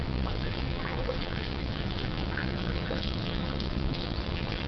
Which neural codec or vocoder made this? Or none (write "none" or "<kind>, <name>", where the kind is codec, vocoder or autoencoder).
vocoder, WaveNeXt